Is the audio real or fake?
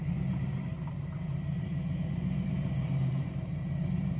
fake